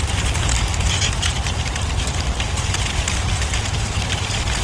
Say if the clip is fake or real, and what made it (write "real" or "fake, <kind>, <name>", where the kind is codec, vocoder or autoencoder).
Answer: fake, vocoder, BigVGAN v2